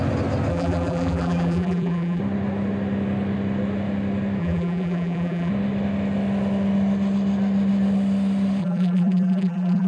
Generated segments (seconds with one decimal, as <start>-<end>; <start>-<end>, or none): 0.5-2.2; 4.4-5.5; 8.6-9.9